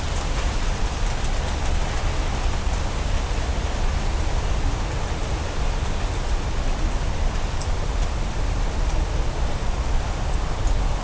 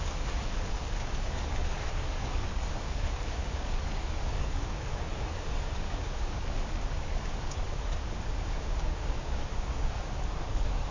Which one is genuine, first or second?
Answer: first